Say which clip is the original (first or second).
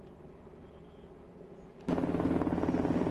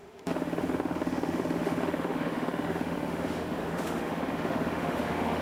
first